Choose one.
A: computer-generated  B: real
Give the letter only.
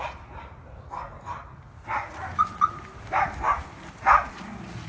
B